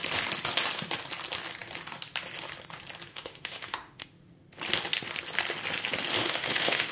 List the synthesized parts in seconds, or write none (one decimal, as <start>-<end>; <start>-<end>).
3.1-4.0; 6.2-6.9